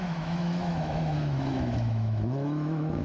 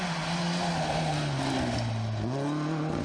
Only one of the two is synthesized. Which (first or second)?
first